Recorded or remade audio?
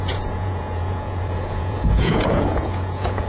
remade